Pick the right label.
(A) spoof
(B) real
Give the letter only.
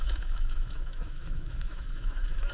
A